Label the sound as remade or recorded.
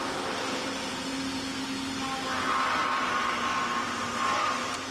recorded